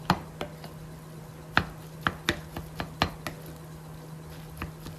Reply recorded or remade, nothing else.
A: recorded